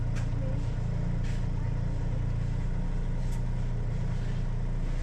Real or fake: real